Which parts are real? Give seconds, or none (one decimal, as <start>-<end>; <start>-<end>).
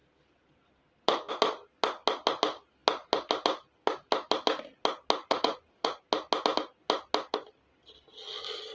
0.0-5.2; 6.1-8.7